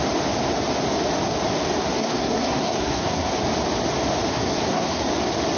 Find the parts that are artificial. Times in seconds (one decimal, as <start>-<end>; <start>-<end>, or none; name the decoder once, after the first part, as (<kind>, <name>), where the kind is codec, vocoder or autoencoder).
2.0-3.3 (codec, SNAC); 4.3-5.0